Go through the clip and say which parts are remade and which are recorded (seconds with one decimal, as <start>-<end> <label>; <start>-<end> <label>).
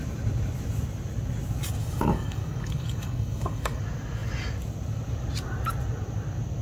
0.0-1.8 recorded; 1.8-3.8 remade; 3.8-6.6 recorded